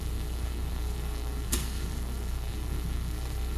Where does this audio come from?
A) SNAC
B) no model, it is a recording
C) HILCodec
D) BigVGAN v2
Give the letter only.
A